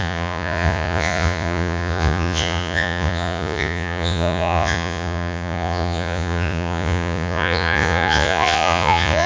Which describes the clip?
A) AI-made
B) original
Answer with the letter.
A